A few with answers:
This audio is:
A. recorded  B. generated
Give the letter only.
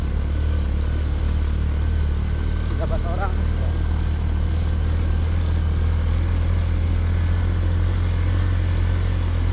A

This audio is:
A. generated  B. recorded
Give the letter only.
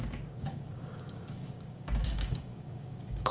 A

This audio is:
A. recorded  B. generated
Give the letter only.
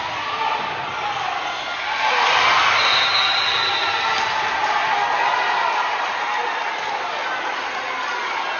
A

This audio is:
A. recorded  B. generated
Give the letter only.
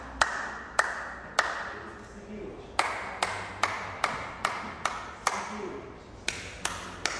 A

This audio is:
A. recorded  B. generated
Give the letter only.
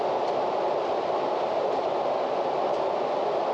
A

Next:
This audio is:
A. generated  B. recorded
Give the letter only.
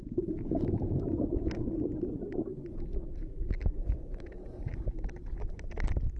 B